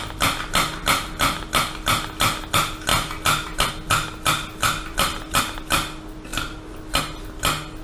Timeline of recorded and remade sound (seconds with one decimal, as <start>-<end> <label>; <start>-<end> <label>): 0.0-4.6 recorded; 4.6-5.4 remade; 5.4-7.8 recorded